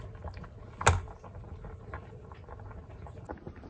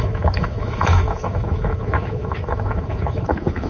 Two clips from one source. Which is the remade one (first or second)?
second